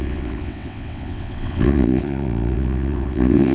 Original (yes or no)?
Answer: no